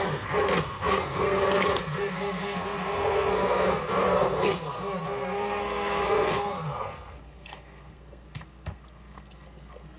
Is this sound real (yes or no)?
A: no